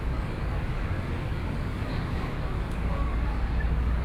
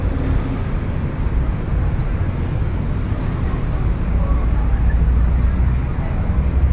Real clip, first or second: second